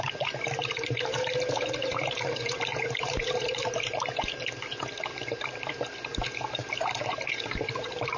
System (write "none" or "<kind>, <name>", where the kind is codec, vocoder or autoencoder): vocoder, BigVGAN v2